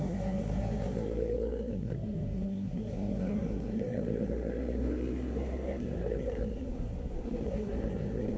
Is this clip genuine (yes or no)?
no